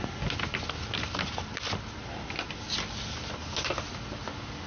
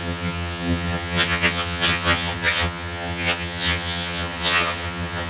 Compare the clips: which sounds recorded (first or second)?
first